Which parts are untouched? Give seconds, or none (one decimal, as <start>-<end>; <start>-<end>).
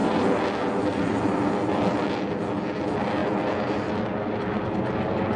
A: 0.0-5.4